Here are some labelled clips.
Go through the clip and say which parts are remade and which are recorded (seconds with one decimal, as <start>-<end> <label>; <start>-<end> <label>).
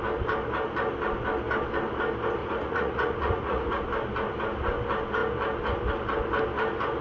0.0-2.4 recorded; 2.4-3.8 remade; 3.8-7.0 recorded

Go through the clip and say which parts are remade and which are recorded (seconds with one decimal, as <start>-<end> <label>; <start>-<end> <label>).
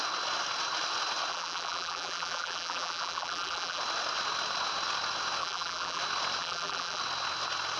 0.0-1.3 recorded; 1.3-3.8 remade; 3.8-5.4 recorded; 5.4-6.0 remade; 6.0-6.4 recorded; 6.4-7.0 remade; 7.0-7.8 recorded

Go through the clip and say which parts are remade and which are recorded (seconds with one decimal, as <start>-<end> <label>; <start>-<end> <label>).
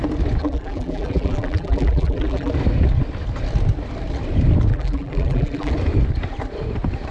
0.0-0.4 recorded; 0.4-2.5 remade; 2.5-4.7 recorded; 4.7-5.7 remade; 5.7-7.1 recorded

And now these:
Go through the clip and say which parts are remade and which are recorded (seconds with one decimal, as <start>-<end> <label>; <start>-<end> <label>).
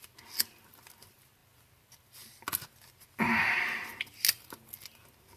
0.0-5.4 recorded